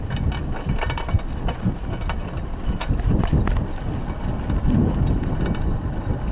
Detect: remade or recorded recorded